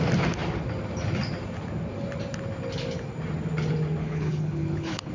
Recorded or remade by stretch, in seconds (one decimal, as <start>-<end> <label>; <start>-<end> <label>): 0.0-4.0 recorded; 4.0-5.1 remade